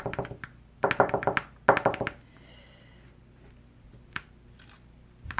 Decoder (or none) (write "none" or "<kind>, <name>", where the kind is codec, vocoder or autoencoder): none